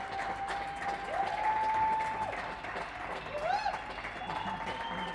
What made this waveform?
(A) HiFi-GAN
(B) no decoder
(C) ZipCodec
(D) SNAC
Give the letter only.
B